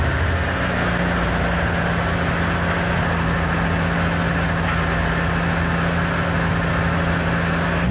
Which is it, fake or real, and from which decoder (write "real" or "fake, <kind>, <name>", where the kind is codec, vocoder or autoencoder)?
real